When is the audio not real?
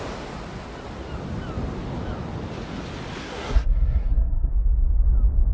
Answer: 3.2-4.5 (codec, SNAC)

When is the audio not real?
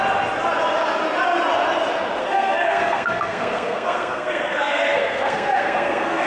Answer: 2.2-6.3 (codec, SNAC)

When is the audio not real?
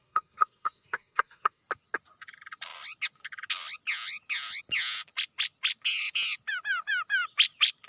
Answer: 0.0-1.6 (codec, SNAC)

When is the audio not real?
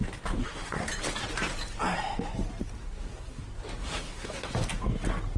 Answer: 0.4-0.9 (codec, SNAC); 2.8-3.4; 3.8-4.5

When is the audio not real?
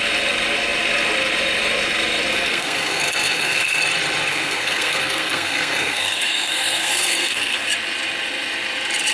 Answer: 2.3-3.8 (codec, SNAC); 4.3-7.7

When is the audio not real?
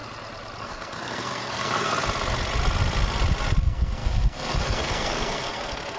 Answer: 0.6-1.9 (codec, SNAC); 3.6-6.0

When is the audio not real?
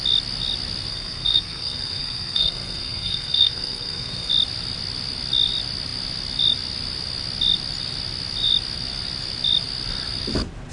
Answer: 0.9-4.3 (codec, SNAC)